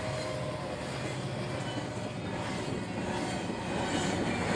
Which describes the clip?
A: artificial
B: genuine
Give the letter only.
B